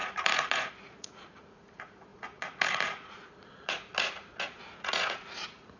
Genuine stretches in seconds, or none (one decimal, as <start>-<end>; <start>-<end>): none